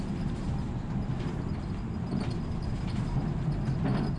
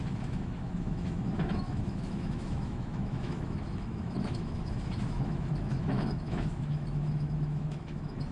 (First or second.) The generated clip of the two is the second